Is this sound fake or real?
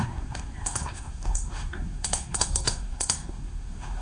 fake